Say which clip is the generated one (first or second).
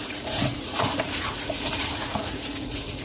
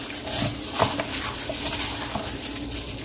first